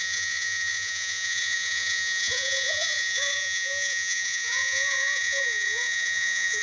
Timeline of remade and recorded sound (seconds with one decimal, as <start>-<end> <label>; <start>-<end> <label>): 0.0-6.6 remade